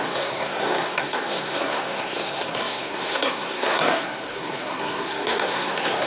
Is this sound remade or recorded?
remade